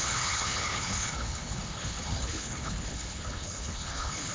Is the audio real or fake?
fake